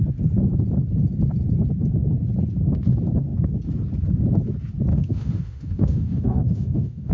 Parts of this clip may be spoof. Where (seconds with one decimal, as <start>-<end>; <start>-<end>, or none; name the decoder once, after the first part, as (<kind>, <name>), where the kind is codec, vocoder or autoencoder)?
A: 4.9-7.1 (autoencoder, DAC-VAE)